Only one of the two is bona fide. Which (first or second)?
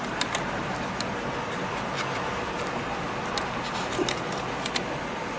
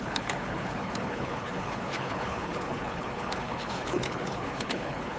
first